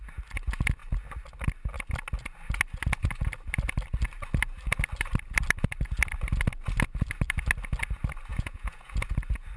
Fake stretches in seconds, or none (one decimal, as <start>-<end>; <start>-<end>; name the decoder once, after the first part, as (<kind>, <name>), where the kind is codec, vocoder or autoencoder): 8.3-8.9 (vocoder, Vocos)